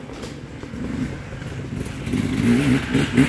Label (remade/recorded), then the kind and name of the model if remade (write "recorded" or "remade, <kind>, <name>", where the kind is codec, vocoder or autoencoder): recorded